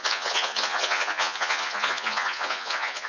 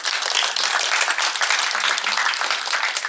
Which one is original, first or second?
second